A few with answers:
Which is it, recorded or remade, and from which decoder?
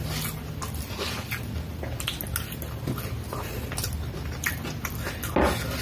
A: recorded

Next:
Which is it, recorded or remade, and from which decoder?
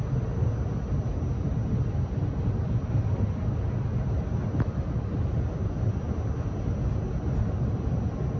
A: recorded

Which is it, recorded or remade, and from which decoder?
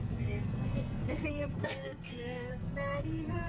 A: remade, codec, SNAC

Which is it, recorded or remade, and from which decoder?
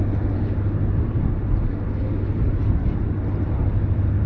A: recorded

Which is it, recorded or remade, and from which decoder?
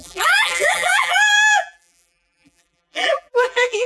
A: remade, vocoder, BigVGAN v2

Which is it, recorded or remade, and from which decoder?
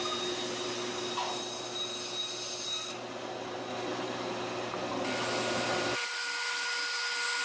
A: recorded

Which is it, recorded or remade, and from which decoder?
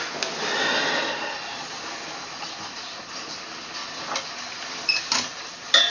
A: recorded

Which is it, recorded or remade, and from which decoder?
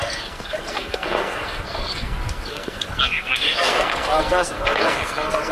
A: remade, codec, SNAC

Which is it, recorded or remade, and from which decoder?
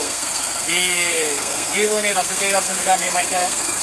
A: remade, codec, SNAC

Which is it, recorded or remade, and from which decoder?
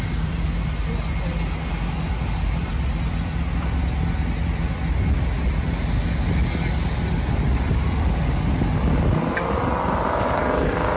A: recorded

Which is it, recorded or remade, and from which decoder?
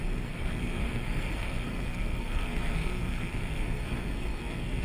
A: remade, codec, SNAC